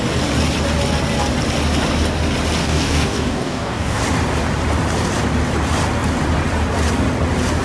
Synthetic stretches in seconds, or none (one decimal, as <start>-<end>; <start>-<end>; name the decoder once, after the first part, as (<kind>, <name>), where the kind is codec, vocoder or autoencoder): 2.6-4.0 (codec, DAC)